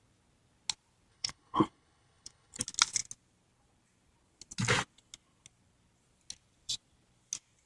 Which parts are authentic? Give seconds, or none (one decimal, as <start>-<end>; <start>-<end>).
0.0-1.1; 2.6-7.7